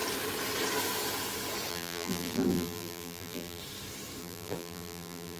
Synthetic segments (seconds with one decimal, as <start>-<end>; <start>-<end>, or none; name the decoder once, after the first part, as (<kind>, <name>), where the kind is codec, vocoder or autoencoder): 1.7-3.6 (vocoder, BigVGAN v2); 4.2-5.4